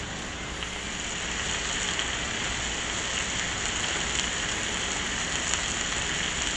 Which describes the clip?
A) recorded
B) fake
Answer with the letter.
A